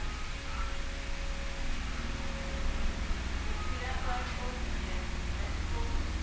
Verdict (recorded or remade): recorded